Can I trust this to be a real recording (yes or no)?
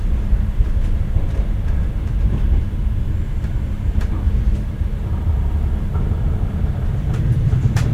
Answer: no